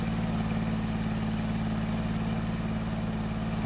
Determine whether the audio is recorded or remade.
recorded